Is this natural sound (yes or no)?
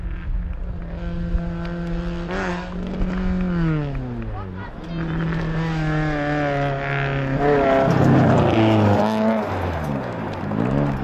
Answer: yes